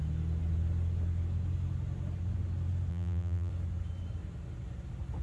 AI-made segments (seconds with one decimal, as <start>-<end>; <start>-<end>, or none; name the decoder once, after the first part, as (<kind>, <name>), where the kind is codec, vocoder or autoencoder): 2.9-3.5 (vocoder, BigVGAN v2)